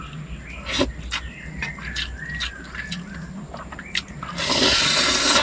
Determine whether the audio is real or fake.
real